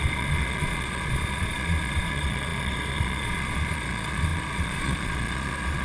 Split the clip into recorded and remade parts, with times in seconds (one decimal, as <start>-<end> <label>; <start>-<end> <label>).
0.0-5.8 remade